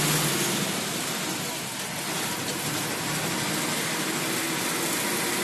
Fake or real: real